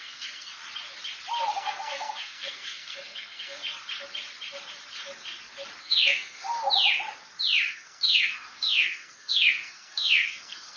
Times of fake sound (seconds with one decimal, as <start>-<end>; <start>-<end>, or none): 0.0-0.6; 1.5-3.6; 5.8-6.5; 7.7-10.8